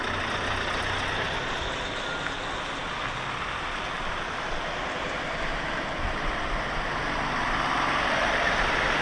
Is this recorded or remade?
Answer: recorded